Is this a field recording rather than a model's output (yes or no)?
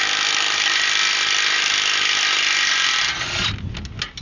yes